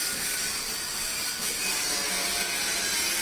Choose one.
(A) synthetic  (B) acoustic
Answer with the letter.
A